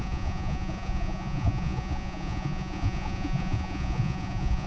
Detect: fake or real fake